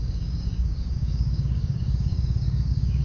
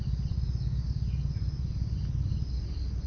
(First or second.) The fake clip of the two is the first